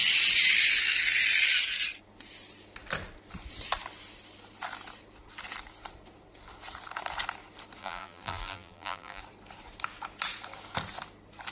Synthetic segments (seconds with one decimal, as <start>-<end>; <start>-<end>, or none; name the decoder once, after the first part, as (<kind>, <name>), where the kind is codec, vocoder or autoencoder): 7.8-9.2 (vocoder, BigVGAN v2)